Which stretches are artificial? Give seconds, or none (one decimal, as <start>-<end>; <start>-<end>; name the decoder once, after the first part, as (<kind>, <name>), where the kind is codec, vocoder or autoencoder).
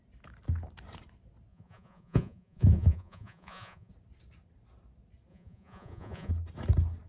1.5-3.9 (vocoder, Vocos); 5.3-6.3